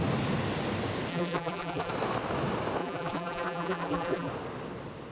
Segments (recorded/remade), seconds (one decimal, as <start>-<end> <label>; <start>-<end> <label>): 0.0-1.1 recorded; 1.1-1.9 remade; 1.9-2.8 recorded; 2.8-4.3 remade; 4.3-5.1 recorded